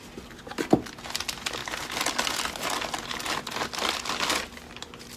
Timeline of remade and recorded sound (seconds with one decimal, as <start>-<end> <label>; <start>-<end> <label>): 0.0-5.2 recorded